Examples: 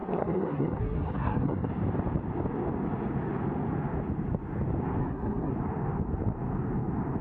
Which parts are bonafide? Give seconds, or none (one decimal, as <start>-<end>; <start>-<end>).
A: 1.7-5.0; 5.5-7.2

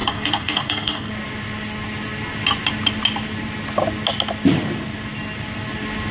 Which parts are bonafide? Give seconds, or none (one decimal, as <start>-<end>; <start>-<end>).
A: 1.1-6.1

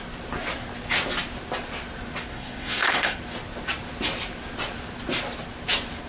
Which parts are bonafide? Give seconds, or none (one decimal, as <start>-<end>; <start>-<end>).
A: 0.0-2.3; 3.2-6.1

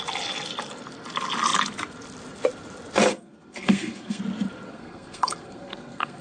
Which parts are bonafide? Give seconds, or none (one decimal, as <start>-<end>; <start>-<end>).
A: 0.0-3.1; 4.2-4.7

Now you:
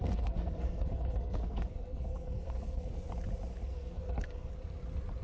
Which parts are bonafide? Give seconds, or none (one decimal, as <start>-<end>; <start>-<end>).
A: 2.9-3.7; 4.5-5.2

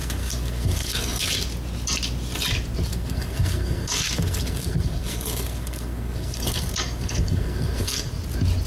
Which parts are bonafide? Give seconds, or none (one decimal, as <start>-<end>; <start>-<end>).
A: 1.3-2.9; 8.1-8.7

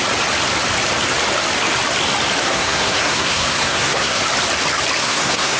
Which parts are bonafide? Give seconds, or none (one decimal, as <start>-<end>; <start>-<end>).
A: 0.0-2.4; 4.2-5.0